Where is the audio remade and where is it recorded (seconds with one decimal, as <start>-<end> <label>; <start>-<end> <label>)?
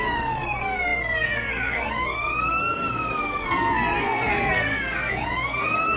0.0-6.0 remade